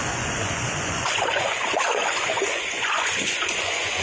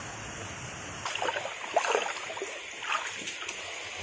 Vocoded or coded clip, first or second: first